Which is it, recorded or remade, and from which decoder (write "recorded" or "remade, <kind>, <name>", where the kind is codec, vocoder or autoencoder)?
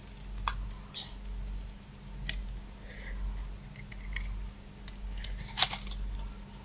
recorded